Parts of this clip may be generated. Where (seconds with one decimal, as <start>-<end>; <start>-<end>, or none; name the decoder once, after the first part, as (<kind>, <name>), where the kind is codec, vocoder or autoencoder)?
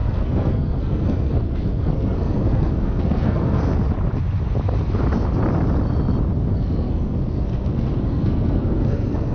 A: 0.0-3.7 (codec, SNAC); 6.5-9.3